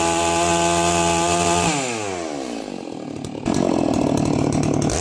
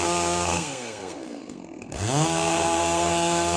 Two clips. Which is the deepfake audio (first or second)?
second